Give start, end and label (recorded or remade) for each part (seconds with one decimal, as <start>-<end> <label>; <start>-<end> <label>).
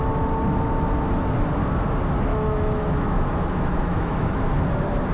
0.0-2.3 recorded; 2.3-4.4 remade; 4.4-5.1 recorded